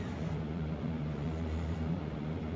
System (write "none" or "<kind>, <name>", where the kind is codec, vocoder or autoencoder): vocoder, Vocos